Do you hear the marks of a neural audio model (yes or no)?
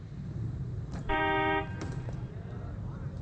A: yes